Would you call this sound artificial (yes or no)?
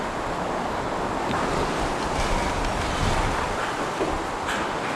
no